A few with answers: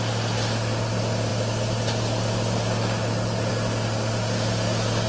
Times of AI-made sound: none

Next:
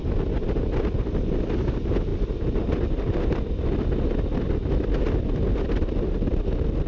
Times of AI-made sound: none